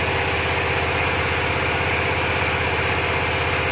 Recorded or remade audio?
recorded